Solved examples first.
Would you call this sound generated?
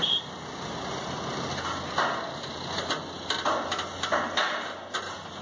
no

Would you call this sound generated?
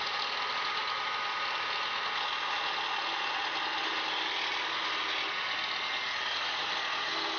no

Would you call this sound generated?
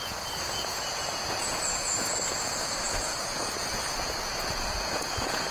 yes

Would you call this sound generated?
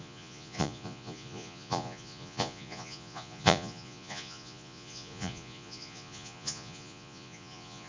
yes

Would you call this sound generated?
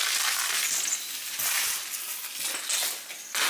no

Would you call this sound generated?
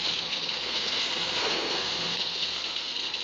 yes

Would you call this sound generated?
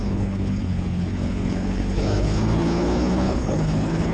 yes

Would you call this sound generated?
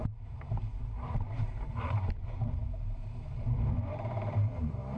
yes